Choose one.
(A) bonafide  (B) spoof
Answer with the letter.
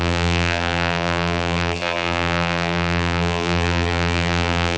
B